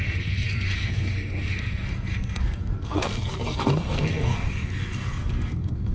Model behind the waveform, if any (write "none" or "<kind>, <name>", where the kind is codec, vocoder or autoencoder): codec, SNAC